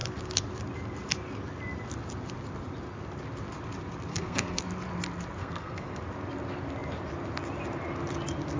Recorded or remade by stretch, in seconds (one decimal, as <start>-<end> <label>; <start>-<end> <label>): 0.0-4.1 recorded; 4.1-4.6 remade; 4.6-5.4 recorded; 5.4-6.0 remade; 6.0-8.6 recorded

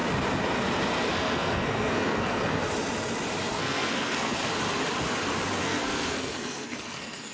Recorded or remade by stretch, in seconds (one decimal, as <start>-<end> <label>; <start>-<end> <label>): 0.0-1.1 recorded; 1.1-2.6 remade; 2.6-3.5 recorded; 3.5-4.4 remade; 4.4-5.6 recorded; 5.6-7.3 remade

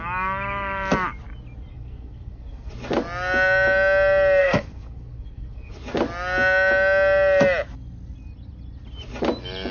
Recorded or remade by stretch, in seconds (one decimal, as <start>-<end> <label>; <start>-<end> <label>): 0.0-1.7 recorded; 1.7-2.7 remade; 2.7-4.4 recorded; 4.4-5.7 remade; 5.7-9.7 recorded

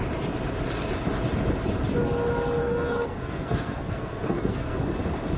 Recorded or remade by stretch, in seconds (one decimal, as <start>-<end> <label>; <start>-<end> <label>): 0.0-2.6 recorded; 2.6-4.8 remade; 4.8-5.4 recorded

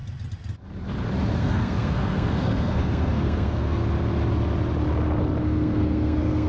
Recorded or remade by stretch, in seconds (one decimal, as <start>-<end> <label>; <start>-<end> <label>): 0.0-1.4 recorded; 1.4-3.8 remade; 3.8-5.4 recorded; 5.4-6.5 remade